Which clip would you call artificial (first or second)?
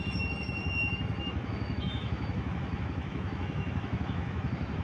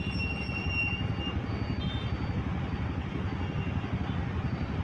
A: first